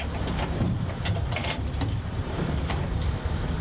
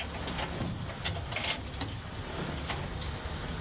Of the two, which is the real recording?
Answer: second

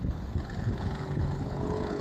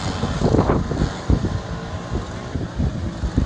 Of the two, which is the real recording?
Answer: second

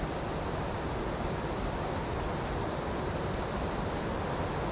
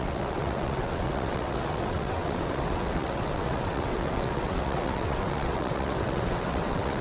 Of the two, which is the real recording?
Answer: first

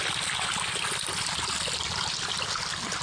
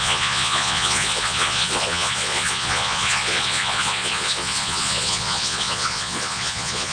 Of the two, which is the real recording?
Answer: first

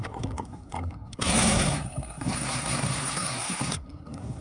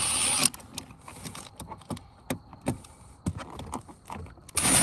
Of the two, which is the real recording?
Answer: second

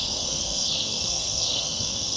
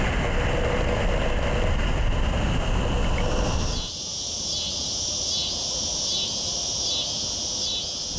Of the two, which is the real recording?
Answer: second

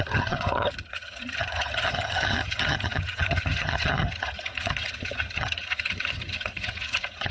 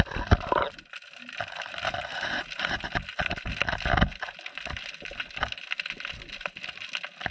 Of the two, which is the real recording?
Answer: second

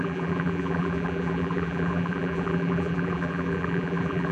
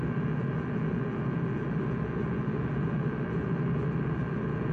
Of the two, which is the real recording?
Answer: second